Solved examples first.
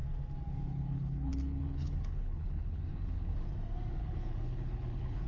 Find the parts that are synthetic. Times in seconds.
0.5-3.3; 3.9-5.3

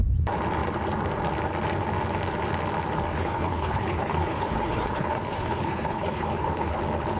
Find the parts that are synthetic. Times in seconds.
3.1-6.8

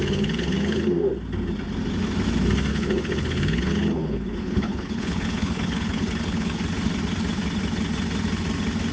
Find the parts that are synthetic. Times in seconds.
0.0-0.9; 2.7-6.6

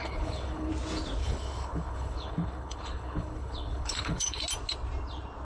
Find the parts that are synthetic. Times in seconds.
0.0-0.7; 1.2-4.4